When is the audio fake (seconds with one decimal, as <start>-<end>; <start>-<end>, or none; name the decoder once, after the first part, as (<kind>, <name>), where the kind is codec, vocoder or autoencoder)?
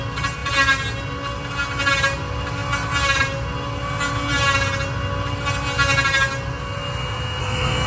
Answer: 7.4-7.9 (codec, SNAC)